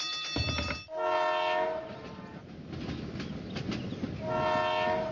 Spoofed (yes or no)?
no